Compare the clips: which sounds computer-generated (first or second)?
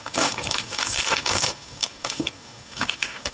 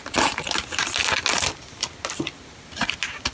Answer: first